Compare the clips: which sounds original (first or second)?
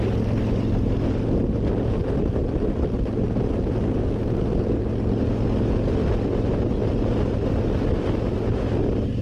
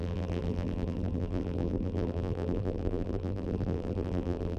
first